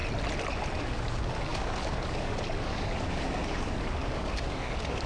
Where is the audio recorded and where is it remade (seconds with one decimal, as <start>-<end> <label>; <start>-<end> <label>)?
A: 0.0-0.8 recorded; 0.8-5.1 remade